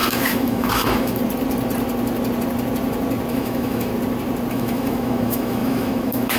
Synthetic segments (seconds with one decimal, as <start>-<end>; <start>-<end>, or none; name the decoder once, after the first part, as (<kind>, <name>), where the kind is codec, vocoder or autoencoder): 0.0-1.2 (autoencoder, DAC-VAE); 3.3-3.9; 4.5-6.4